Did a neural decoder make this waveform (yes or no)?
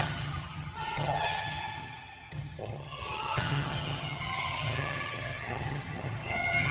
yes